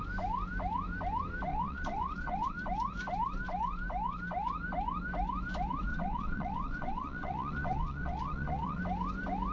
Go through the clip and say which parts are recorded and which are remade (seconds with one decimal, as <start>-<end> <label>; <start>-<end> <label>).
0.0-1.5 recorded; 1.5-2.5 remade; 2.5-5.9 recorded; 5.9-8.8 remade; 8.8-9.5 recorded